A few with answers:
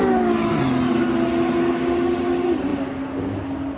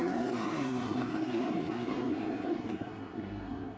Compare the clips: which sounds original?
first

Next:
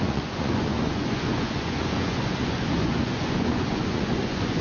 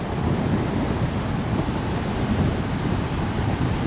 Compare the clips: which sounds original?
second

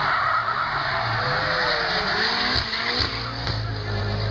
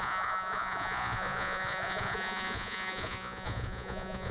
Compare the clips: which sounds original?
first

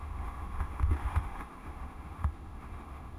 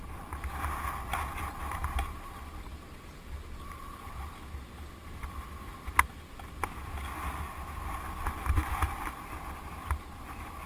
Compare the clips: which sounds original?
second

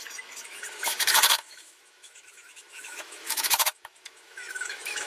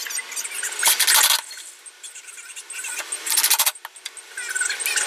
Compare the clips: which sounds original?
second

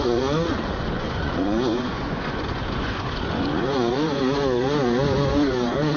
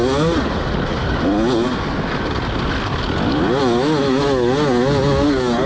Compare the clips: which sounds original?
second